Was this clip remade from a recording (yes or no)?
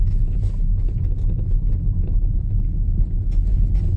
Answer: no